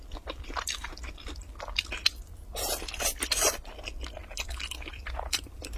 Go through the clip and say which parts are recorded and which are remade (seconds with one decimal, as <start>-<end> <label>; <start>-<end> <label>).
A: 0.0-1.4 remade; 1.4-4.9 recorded; 4.9-5.8 remade